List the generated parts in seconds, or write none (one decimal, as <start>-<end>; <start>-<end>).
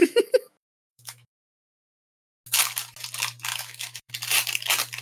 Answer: 0.0-1.3; 3.5-4.1